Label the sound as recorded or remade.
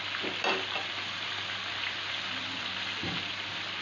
recorded